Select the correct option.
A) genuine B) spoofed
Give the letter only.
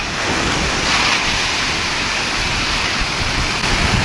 A